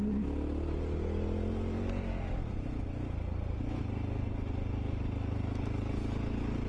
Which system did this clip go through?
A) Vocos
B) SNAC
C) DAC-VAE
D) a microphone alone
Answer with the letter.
D